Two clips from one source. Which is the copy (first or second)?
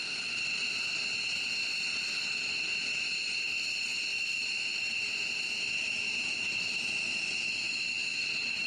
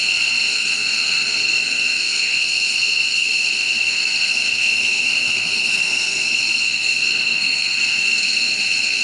second